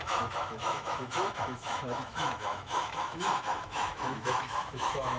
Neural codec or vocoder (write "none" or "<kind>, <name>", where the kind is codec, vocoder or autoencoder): autoencoder, DAC-VAE